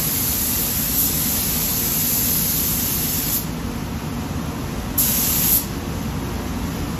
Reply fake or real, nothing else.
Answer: real